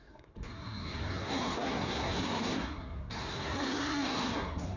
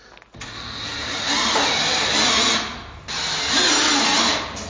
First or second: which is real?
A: second